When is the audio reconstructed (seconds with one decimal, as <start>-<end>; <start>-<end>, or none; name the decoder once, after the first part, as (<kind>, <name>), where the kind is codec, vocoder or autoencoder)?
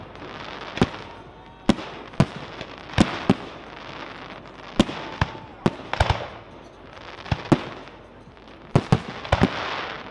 none